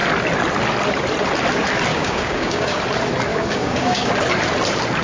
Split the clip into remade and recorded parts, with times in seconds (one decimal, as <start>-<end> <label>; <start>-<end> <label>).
0.0-1.9 recorded; 1.9-2.8 remade; 2.8-3.3 recorded; 3.3-4.1 remade; 4.1-5.0 recorded